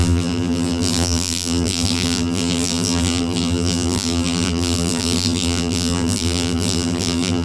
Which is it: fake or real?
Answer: fake